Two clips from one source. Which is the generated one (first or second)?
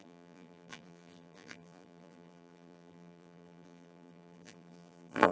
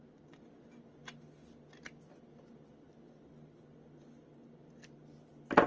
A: first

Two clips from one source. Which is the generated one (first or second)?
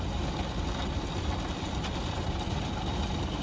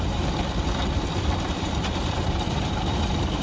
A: second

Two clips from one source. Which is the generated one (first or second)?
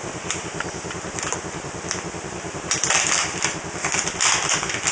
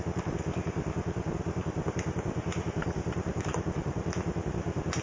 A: second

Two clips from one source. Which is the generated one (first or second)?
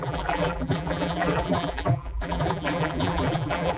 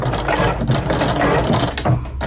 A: first